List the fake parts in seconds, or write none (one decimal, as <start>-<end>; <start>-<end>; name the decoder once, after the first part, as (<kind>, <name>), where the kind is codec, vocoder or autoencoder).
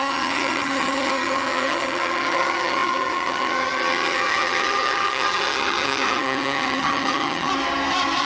0.0-7.5 (vocoder, HiFi-GAN)